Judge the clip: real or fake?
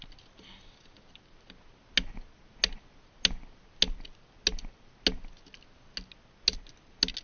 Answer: real